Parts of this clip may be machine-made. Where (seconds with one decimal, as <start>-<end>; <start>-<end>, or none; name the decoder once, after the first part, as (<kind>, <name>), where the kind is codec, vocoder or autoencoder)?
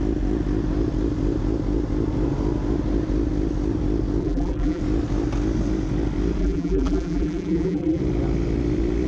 4.2-4.8 (vocoder, BigVGAN v2); 6.4-8.0